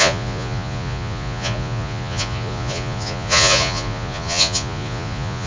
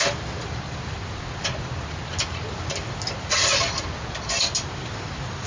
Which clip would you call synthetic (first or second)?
first